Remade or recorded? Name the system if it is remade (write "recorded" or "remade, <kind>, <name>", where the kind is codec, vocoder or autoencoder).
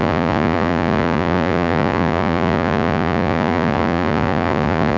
remade, vocoder, Vocos